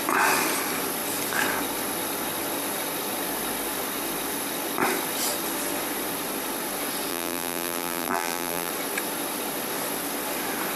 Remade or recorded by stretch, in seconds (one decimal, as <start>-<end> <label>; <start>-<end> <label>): 0.0-7.1 recorded; 7.1-8.7 remade; 8.7-10.8 recorded